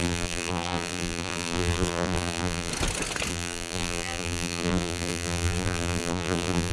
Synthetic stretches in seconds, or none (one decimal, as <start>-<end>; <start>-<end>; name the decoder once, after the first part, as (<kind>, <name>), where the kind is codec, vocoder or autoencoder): 0.0-2.7 (vocoder, BigVGAN v2); 3.3-6.7